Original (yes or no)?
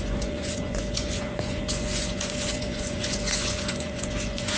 no